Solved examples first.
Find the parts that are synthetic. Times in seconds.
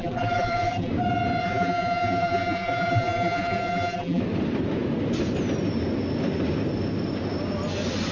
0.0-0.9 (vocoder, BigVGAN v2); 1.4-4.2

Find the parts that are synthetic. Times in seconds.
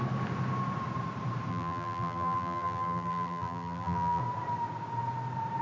1.5-4.2 (vocoder, BigVGAN v2)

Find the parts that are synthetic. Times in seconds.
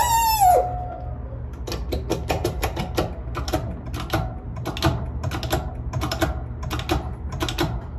2.1-2.8 (vocoder, BigVGAN v2)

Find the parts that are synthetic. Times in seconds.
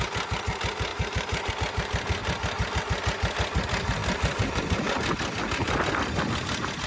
0.9-1.5 (vocoder, BigVGAN v2); 4.0-4.6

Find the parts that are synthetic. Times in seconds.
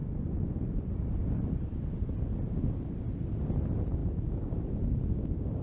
0.0-3.4 (vocoder, BigVGAN v2); 4.0-4.9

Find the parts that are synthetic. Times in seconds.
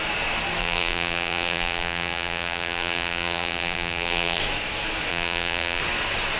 0.6-4.4 (vocoder, BigVGAN v2); 5.1-5.8